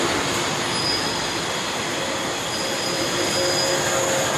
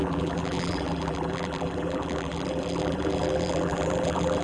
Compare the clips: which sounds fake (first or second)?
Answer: second